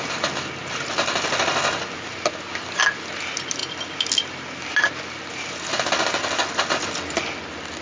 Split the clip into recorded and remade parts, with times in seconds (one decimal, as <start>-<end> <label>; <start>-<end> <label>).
0.0-7.8 recorded